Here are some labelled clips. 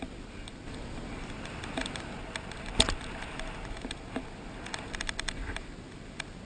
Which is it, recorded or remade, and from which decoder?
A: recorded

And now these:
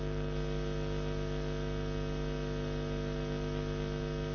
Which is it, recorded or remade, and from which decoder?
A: recorded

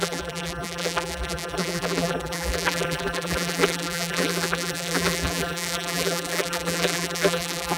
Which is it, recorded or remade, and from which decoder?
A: remade, vocoder, BigVGAN v2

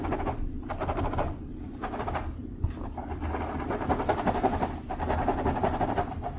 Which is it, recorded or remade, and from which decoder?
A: recorded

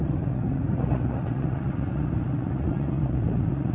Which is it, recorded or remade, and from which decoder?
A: remade, vocoder, Vocos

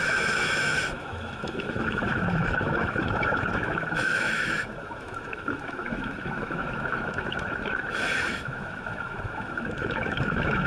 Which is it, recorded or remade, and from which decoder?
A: remade, autoencoder, DAC-VAE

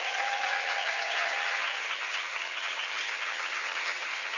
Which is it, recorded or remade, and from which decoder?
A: remade, vocoder, HiFi-GAN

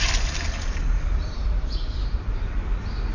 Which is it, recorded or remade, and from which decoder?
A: remade, vocoder, BigVGAN v2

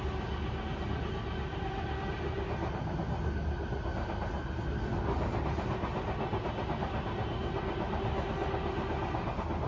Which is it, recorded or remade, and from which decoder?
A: recorded